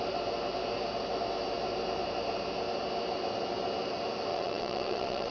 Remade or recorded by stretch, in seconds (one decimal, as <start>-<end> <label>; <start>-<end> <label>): 0.0-4.3 recorded; 4.3-5.3 remade